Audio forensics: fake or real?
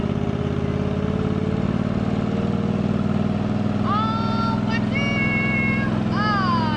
real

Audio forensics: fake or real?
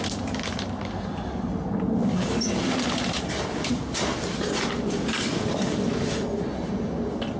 real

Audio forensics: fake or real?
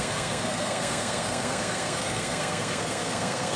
fake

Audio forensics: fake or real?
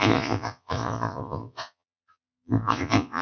fake